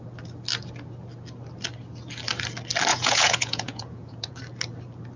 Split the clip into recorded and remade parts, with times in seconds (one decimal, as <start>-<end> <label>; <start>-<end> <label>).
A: 0.0-2.9 recorded; 2.9-4.3 remade; 4.3-5.2 recorded